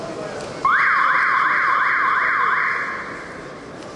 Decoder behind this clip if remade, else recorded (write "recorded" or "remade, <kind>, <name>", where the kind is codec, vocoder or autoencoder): recorded